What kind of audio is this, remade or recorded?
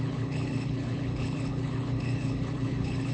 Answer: remade